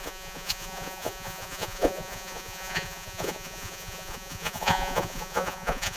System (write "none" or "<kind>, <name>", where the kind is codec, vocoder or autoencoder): vocoder, Vocos